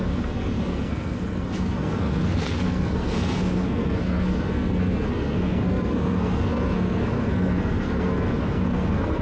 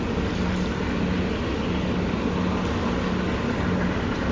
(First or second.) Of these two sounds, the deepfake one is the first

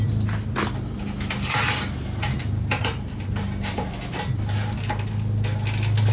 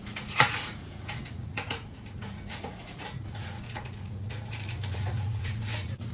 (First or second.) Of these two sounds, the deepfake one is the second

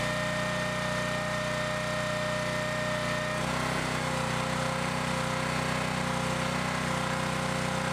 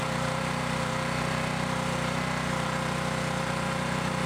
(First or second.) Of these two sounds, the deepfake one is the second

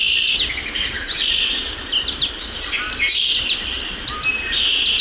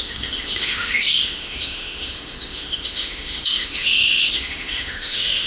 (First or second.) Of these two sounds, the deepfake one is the second